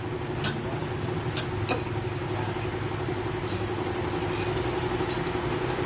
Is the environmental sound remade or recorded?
recorded